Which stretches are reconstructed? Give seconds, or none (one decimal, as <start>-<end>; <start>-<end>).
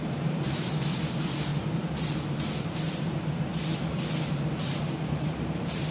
0.0-1.5; 3.1-3.5; 4.8-5.9